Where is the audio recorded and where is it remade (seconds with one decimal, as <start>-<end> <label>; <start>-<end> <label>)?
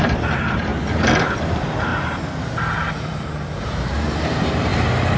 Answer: 0.0-0.7 remade; 0.7-1.3 recorded; 1.3-4.7 remade; 4.7-5.2 recorded